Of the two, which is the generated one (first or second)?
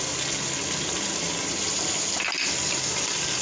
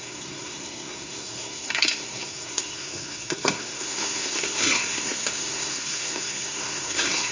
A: second